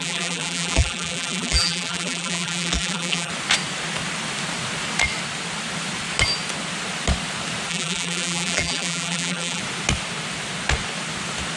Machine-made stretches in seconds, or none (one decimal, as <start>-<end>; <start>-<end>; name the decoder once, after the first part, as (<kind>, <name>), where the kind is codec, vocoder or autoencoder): 0.0-3.3 (vocoder, BigVGAN v2); 7.7-9.6

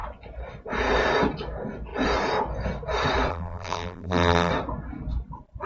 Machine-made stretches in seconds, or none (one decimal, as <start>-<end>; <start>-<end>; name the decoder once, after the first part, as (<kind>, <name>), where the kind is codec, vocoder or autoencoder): 3.3-4.5 (vocoder, BigVGAN v2)